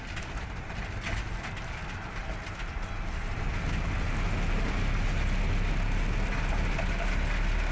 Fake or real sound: real